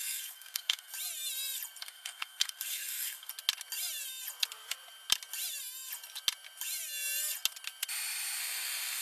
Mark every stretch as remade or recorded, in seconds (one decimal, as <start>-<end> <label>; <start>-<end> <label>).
0.0-0.9 remade; 0.9-1.8 recorded; 1.8-3.3 remade; 3.3-8.4 recorded; 8.4-9.0 remade